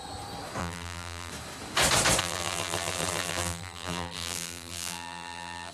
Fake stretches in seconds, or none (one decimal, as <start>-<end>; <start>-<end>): 0.6-1.3; 2.2-5.7